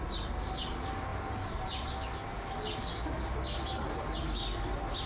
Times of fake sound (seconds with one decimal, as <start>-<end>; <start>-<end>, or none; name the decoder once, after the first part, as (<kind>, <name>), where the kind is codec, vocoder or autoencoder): none